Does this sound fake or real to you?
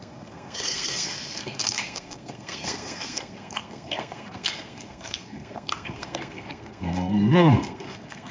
fake